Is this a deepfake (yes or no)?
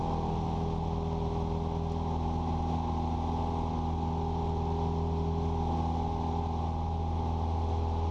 no